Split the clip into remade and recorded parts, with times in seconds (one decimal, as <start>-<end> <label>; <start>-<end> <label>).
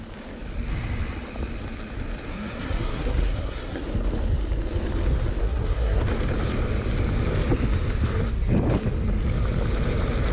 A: 0.0-2.3 recorded; 2.3-3.8 remade; 3.8-5.4 recorded; 5.4-6.0 remade; 6.0-10.3 recorded